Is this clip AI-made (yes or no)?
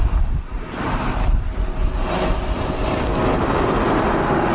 no